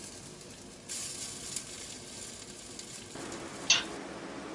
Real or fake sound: real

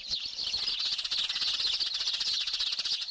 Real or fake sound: real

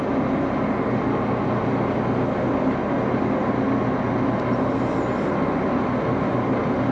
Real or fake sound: real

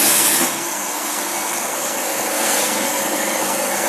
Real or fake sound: fake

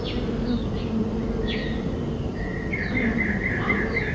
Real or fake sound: real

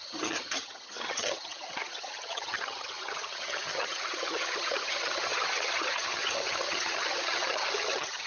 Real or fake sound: fake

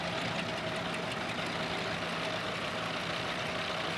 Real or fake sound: real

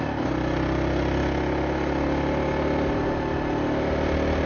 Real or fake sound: real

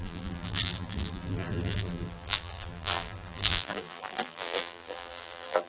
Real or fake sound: fake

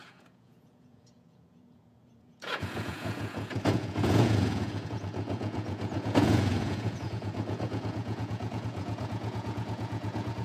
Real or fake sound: fake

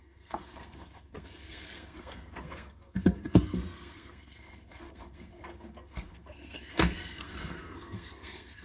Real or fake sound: fake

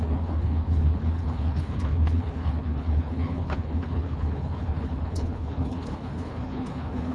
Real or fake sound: fake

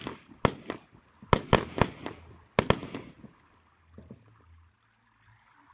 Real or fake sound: real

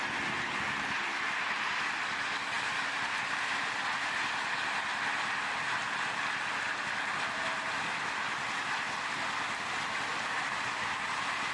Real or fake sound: real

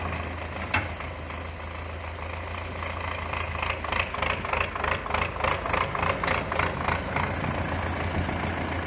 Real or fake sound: real